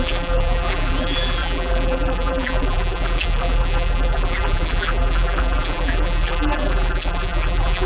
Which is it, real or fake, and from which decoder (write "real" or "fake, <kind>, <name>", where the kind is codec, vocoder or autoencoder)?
fake, vocoder, BigVGAN v2